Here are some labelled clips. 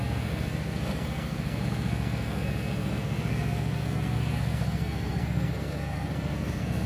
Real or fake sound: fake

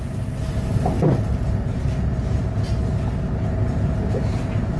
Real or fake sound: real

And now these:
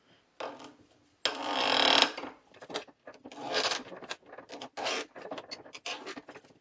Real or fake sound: real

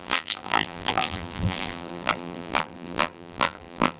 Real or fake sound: fake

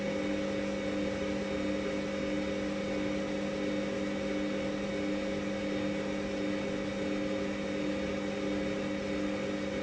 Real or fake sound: real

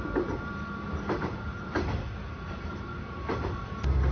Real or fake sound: fake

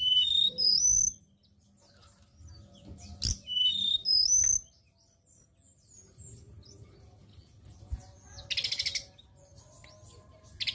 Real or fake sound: real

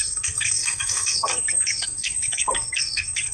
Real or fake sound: fake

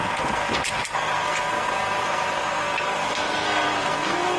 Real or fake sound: fake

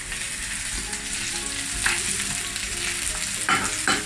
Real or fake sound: real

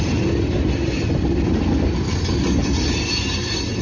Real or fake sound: real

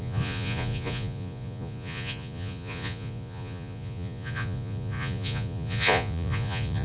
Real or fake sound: fake